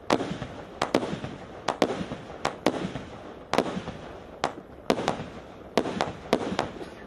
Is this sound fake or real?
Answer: real